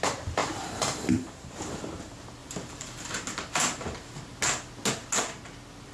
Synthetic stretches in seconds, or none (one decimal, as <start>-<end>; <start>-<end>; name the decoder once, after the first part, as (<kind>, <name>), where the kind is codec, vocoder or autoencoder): 0.4-1.7 (vocoder, BigVGAN v2); 2.4-4.4